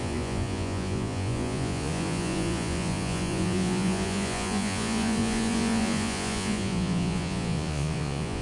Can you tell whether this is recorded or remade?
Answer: remade